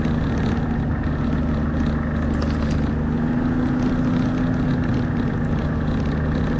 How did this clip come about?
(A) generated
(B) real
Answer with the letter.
B